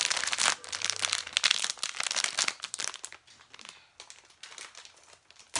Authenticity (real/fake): real